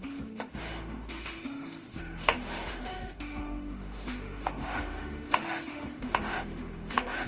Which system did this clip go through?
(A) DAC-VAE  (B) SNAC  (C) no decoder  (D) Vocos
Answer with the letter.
A